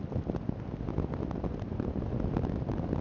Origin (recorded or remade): recorded